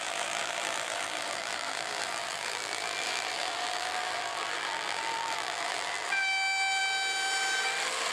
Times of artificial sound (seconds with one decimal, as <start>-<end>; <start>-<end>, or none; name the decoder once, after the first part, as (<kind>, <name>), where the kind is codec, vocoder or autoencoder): 0.0-6.8 (vocoder, BigVGAN v2)

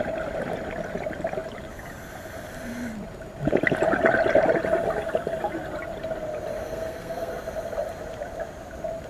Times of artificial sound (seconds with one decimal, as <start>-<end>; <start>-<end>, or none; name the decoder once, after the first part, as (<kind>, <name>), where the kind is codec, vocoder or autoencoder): 6.6-7.3 (codec, SNAC)

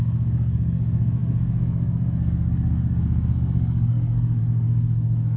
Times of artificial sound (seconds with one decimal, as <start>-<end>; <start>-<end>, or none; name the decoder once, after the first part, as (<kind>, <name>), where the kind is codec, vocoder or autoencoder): 0.0-5.4 (codec, SNAC)

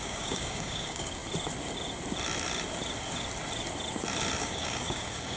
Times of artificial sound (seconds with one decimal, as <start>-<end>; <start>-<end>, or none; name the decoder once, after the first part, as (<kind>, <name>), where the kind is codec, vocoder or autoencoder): 0.0-1.2 (codec, DAC); 4.4-5.4